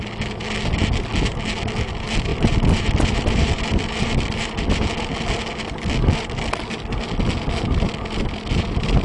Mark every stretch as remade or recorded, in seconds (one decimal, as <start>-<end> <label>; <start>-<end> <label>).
0.0-2.3 recorded; 2.3-4.9 remade; 4.9-9.0 recorded